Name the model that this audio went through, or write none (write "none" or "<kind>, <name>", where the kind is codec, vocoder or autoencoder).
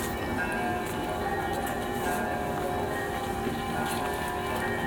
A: none